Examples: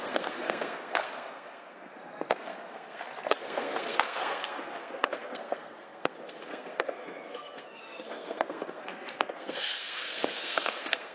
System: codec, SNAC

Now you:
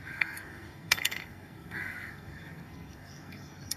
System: codec, SNAC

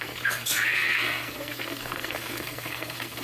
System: codec, SNAC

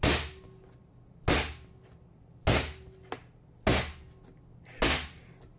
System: none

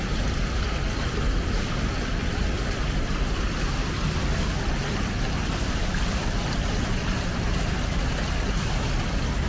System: none